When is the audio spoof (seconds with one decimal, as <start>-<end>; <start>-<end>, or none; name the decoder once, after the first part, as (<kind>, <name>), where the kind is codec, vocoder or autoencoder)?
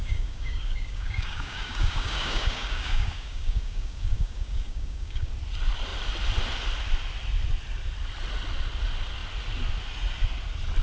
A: 0.0-5.3 (codec, DAC)